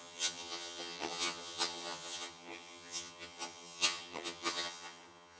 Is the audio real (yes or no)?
no